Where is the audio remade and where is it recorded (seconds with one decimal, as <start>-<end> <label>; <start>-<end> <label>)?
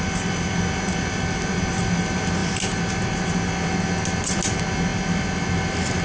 0.0-6.0 recorded